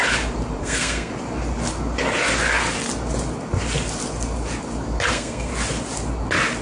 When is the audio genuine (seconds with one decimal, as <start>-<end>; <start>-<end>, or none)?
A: 0.0-0.6; 1.1-5.1; 5.5-6.6